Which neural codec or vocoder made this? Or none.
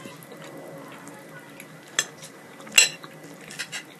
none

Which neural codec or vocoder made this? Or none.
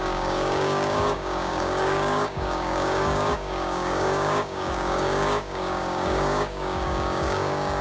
codec, DAC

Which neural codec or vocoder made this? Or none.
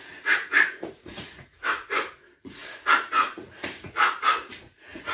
vocoder, Vocos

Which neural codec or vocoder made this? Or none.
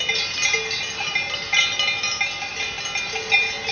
none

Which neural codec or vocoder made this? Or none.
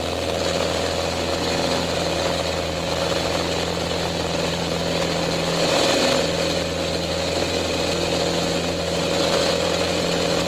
none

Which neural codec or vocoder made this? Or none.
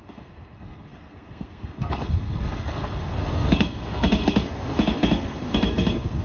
codec, SNAC